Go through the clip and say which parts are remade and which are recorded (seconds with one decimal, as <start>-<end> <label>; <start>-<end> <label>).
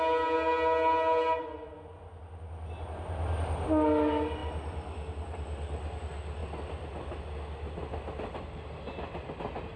0.0-9.8 recorded